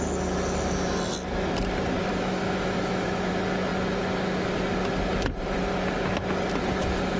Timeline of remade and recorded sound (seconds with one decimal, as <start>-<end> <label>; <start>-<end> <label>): 0.0-2.1 recorded; 2.1-3.3 remade; 3.3-7.2 recorded